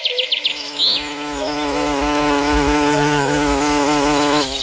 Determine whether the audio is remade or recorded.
remade